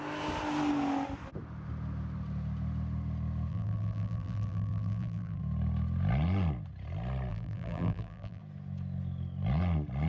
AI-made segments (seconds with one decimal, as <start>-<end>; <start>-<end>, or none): 3.5-5.4; 7.3-8.4